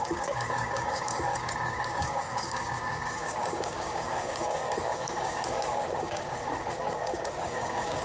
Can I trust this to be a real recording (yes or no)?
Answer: no